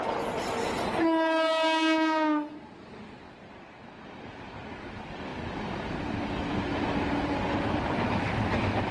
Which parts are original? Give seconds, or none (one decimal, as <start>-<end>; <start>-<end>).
0.0-8.9